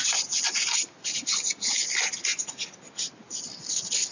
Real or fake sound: real